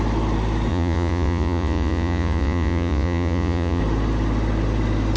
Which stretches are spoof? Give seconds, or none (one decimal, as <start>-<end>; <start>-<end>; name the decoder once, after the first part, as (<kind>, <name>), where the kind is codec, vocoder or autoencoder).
0.7-3.8 (vocoder, Vocos)

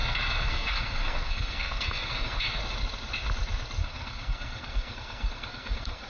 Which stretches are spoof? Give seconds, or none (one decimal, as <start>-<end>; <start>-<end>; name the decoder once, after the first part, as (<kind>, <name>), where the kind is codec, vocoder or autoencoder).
0.0-2.6 (codec, SNAC); 3.8-6.1

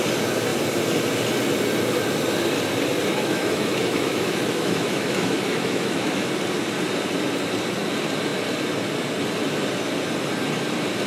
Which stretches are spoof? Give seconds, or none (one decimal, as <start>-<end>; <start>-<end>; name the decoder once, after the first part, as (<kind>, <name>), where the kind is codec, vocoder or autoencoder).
3.1-6.3 (autoencoder, DAC-VAE)

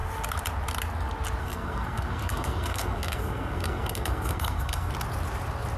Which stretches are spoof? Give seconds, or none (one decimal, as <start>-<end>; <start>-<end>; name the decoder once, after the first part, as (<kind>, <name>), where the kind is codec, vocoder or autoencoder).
1.4-4.9 (codec, SNAC)

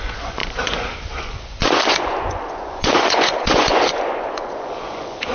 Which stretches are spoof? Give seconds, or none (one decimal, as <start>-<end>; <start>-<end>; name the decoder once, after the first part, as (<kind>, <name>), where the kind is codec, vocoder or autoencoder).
0.0-5.3 (vocoder, Vocos)

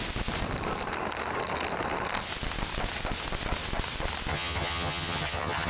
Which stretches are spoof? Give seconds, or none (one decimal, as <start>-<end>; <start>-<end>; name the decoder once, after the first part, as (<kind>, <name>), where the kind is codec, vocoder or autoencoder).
4.3-5.7 (vocoder, HiFi-GAN)

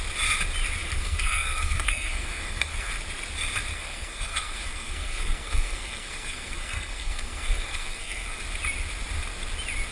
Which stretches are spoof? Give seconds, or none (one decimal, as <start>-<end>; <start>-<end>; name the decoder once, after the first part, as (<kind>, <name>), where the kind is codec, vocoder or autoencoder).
0.8-2.9 (codec, SNAC); 3.7-8.4

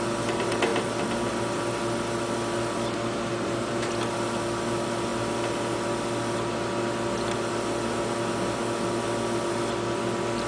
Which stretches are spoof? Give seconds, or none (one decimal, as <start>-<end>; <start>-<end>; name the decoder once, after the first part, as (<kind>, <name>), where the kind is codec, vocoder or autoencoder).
3.3-3.9 (vocoder, BigVGAN v2)